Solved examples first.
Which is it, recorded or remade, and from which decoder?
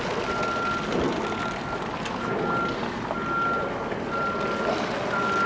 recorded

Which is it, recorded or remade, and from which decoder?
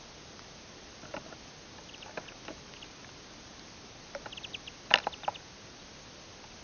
recorded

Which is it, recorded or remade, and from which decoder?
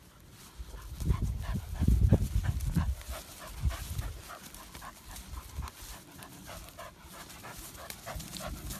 recorded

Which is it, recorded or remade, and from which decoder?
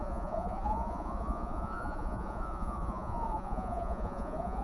remade, vocoder, Vocos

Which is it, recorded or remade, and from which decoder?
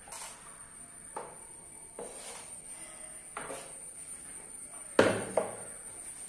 recorded